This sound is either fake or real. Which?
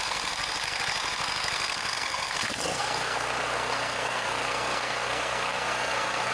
fake